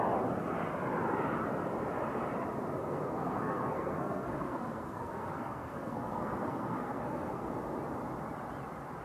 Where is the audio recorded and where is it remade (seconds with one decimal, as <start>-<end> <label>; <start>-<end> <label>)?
0.0-2.8 recorded; 2.8-7.5 remade; 7.5-9.0 recorded